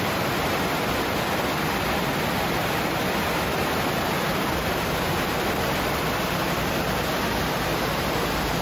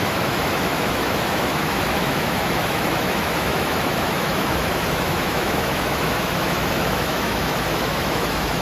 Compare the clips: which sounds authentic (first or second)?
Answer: first